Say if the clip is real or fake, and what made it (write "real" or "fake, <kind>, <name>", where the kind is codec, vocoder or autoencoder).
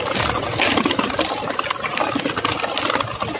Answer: real